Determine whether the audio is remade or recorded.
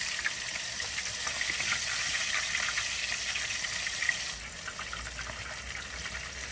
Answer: recorded